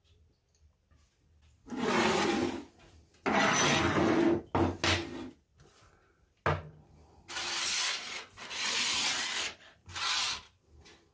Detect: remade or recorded recorded